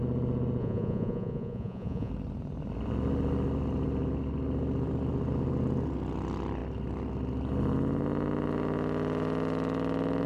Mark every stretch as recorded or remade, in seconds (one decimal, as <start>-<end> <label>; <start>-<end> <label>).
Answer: 0.0-0.6 recorded; 0.6-2.1 remade; 2.1-10.3 recorded